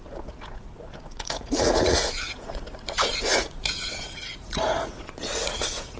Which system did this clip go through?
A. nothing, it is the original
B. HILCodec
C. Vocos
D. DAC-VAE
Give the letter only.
C